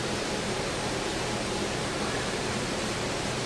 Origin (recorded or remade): remade